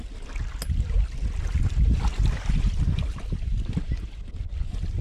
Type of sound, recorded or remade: recorded